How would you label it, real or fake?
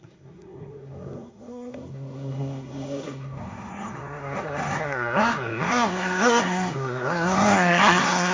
fake